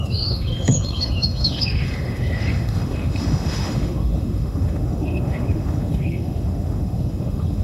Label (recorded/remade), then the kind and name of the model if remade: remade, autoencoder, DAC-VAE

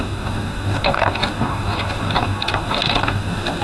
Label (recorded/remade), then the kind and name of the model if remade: remade, codec, DAC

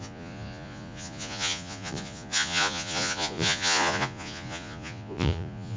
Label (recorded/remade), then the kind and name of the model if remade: remade, vocoder, Vocos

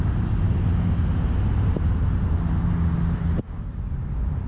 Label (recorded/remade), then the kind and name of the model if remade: recorded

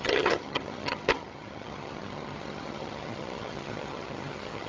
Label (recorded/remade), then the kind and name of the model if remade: remade, vocoder, HiFi-GAN